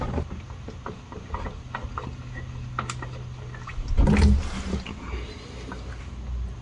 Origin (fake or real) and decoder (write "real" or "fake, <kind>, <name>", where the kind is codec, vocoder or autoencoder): real